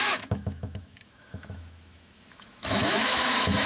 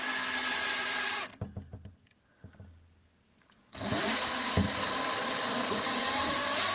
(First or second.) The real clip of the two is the second